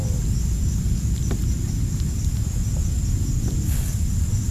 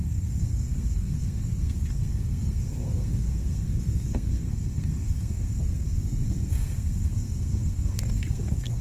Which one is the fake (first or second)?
second